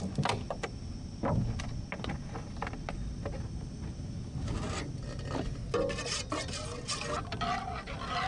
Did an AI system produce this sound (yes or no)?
no